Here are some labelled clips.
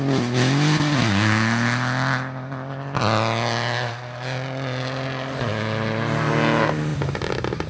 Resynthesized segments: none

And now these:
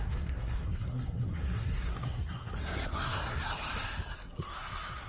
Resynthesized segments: 0.0-3.5 (codec, SNAC); 4.1-5.1

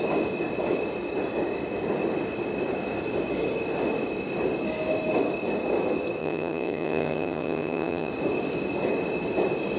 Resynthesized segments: 6.2-8.1 (vocoder, HiFi-GAN)